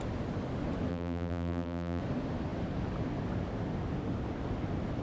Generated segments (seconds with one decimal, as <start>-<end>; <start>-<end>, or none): 0.9-2.0

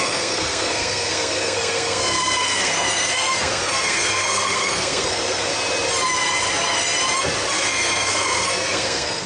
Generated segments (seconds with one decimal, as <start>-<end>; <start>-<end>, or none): 0.0-5.5; 7.5-9.3

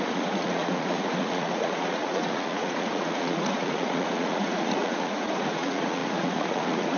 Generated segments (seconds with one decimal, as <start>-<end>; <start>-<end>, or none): 0.0-7.0